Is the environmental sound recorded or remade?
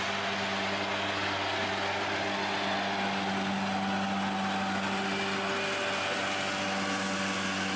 recorded